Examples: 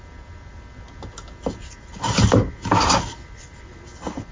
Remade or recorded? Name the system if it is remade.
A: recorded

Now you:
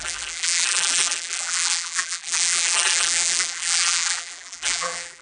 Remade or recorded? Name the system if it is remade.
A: remade, vocoder, BigVGAN v2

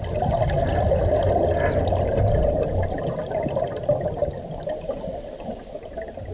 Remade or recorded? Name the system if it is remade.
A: recorded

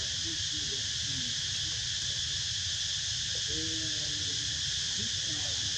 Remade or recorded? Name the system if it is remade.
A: recorded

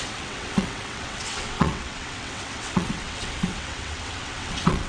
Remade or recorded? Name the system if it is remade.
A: remade, vocoder, WaveNeXt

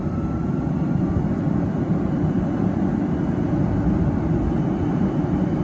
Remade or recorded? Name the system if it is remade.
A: recorded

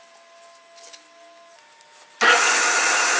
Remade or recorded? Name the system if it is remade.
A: recorded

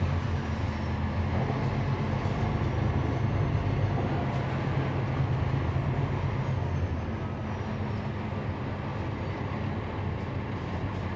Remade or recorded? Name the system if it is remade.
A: recorded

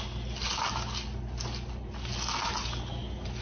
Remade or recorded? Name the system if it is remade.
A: recorded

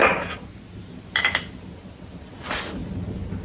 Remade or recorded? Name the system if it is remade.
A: recorded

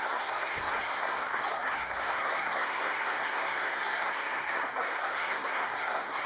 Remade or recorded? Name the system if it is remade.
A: remade, codec, SNAC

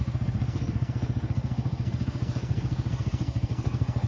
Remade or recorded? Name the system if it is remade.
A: remade, codec, SNAC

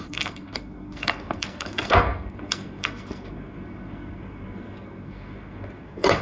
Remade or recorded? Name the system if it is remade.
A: remade, codec, SNAC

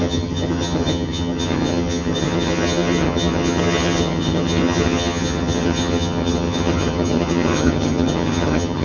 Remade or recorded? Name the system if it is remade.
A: remade, vocoder, HiFi-GAN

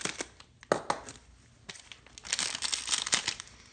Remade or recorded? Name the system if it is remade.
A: recorded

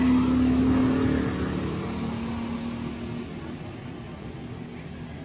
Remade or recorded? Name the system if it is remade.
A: recorded